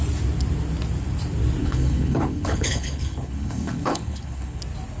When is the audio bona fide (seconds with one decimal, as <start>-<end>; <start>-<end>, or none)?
0.0-1.6; 4.6-5.0